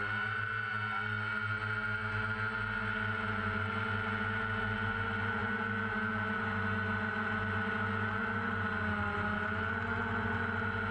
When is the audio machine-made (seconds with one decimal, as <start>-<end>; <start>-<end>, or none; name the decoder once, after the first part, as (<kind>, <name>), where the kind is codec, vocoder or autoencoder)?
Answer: none